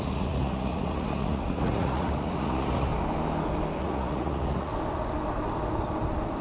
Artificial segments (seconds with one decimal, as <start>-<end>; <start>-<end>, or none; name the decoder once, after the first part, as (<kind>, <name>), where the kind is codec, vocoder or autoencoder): 0.0-2.9 (vocoder, Vocos); 3.8-4.7